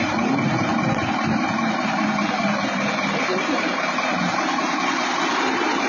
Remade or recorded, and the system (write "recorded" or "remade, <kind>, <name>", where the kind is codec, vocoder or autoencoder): remade, vocoder, BigVGAN v2